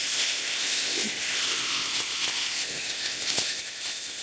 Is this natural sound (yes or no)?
no